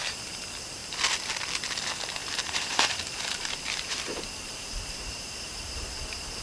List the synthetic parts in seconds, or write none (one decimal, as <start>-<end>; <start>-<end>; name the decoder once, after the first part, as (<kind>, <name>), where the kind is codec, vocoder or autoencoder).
2.2-6.0 (vocoder, BigVGAN v2)